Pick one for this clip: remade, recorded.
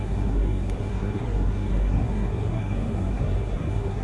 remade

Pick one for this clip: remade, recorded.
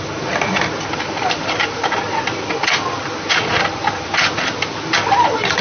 recorded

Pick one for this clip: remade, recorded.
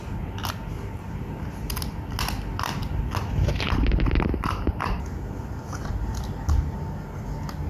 recorded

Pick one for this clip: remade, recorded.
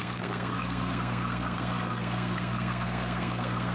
remade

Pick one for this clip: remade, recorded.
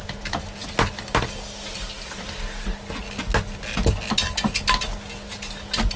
recorded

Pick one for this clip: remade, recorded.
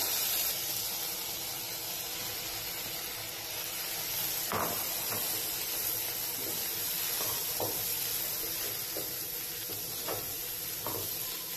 recorded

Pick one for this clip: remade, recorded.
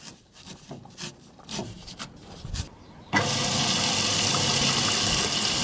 recorded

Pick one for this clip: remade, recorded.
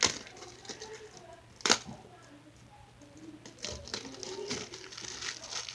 recorded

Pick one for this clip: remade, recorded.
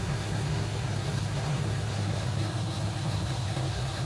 remade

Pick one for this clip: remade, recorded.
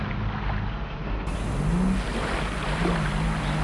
recorded